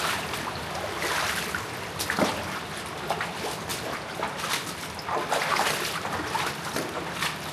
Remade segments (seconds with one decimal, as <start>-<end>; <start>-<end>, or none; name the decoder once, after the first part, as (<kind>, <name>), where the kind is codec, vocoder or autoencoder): none